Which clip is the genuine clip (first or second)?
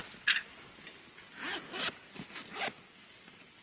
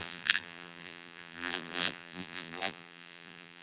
first